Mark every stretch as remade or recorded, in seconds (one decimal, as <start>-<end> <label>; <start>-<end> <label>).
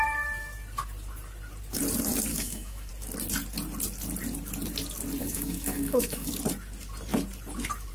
0.0-2.3 recorded; 2.3-2.9 remade; 2.9-5.2 recorded; 5.2-6.3 remade; 6.3-7.9 recorded